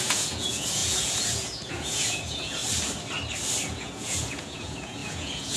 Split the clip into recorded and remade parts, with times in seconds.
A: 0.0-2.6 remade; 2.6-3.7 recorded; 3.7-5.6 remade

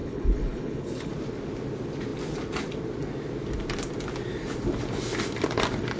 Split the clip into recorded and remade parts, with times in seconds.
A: 0.0-1.1 remade; 1.1-6.0 recorded

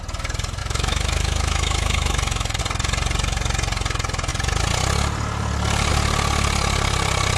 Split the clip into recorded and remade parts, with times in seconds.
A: 0.0-0.6 recorded; 0.6-2.6 remade; 2.6-7.4 recorded

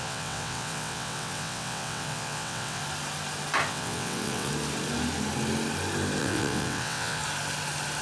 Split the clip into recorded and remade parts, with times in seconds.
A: 0.0-2.8 remade; 2.8-3.7 recorded; 3.7-4.5 remade; 4.5-6.2 recorded; 6.2-7.2 remade; 7.2-8.0 recorded